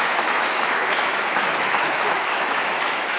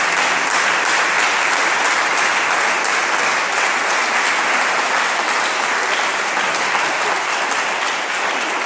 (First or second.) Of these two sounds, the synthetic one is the first